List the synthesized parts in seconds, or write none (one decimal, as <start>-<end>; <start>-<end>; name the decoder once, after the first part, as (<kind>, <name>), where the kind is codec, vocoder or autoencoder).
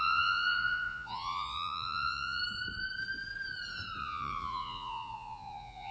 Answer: 0.0-2.4 (vocoder, Vocos); 4.0-5.9